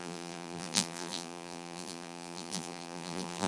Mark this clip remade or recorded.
remade